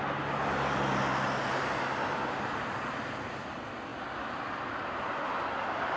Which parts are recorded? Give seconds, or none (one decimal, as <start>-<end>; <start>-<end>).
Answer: 0.0-6.0